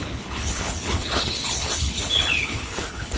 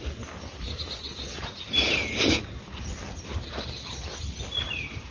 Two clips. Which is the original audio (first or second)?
second